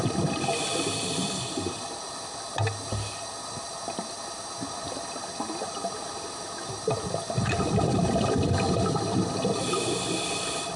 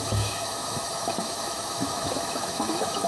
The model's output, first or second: second